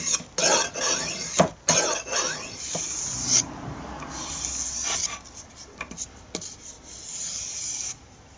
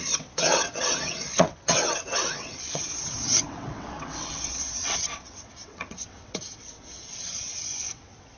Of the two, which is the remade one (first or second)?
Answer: second